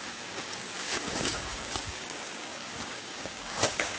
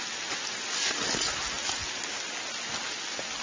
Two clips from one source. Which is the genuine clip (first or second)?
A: second